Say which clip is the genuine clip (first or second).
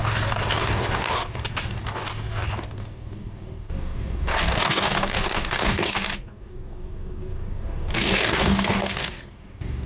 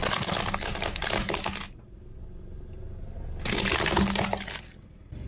second